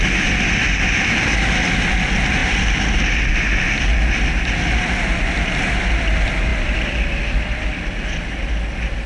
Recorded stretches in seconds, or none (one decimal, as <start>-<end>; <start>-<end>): 0.0-9.1